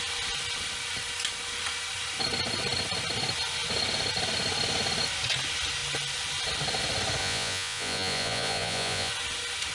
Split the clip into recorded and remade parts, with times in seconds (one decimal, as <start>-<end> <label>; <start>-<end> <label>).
0.0-7.2 recorded; 7.2-9.1 remade; 9.1-9.7 recorded